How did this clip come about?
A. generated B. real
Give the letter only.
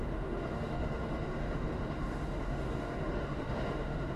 A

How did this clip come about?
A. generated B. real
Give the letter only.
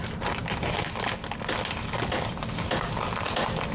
B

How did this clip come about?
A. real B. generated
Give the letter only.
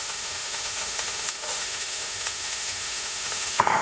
B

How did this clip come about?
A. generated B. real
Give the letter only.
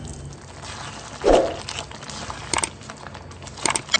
B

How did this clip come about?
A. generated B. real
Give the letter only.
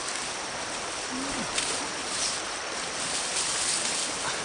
B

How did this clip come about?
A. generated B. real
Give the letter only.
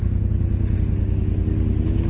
B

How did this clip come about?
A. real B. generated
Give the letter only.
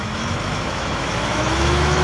B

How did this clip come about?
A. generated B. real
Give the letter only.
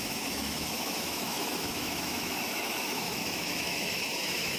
A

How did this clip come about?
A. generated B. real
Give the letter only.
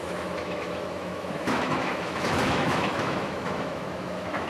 A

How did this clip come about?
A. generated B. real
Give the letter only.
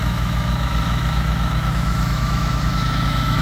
A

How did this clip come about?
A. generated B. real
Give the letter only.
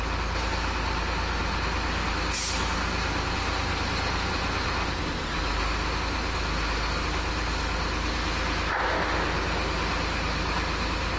B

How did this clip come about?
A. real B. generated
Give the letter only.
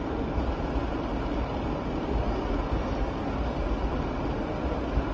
A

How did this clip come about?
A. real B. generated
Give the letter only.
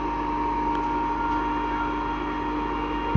A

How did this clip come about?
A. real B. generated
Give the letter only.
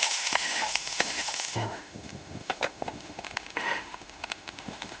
B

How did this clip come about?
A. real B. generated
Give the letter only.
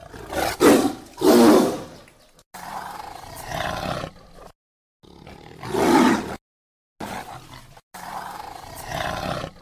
A